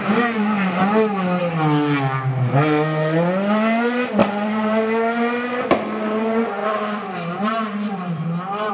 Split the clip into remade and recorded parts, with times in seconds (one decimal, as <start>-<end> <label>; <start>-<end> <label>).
0.0-4.2 recorded; 4.2-4.8 remade; 4.8-6.6 recorded; 6.6-8.7 remade